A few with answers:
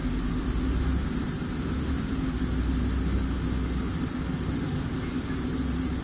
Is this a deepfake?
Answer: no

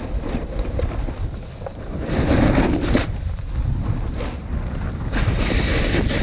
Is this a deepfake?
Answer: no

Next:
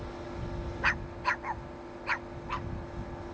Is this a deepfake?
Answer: no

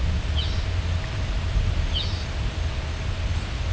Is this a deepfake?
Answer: no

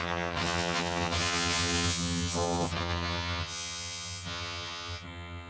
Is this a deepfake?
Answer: yes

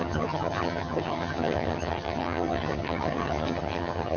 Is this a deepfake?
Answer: yes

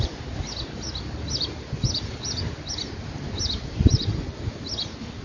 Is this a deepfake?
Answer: no